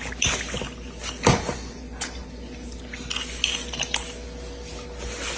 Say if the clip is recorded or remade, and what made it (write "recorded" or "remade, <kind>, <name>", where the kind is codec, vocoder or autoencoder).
recorded